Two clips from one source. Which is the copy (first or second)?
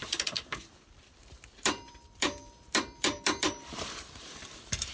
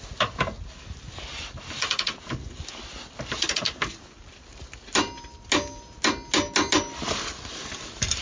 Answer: first